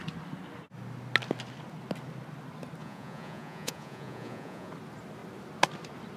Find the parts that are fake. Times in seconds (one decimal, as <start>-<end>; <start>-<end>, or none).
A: 2.8-4.7